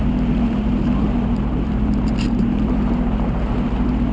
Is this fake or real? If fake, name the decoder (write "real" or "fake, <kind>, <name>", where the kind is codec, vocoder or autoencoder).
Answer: fake, vocoder, BigVGAN v2